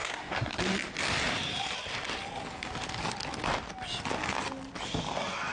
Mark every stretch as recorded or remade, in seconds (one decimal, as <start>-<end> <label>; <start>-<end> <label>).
0.0-0.6 remade; 0.6-5.5 recorded